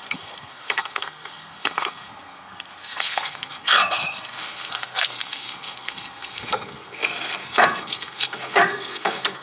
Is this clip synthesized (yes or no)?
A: yes